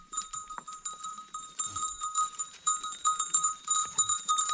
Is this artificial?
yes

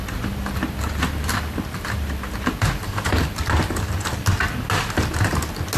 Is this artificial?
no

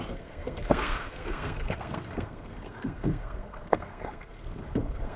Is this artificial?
yes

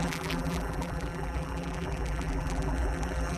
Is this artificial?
yes